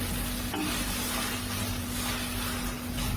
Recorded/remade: remade